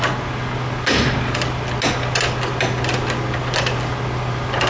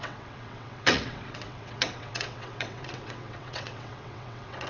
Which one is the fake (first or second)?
second